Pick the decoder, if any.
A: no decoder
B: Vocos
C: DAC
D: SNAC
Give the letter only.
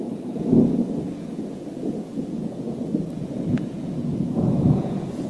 B